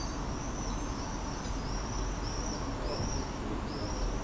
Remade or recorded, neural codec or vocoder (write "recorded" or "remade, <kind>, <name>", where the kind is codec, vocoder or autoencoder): recorded